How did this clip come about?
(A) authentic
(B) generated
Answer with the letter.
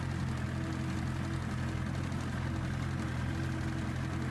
A